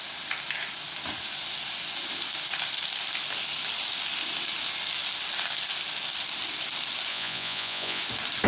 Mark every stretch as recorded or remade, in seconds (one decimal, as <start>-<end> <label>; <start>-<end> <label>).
0.0-7.1 recorded; 7.1-8.0 remade; 8.0-8.5 recorded